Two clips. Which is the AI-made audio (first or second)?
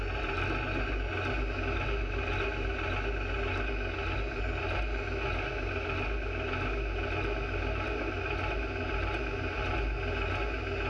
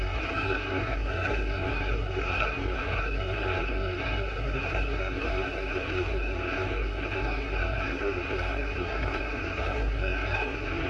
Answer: second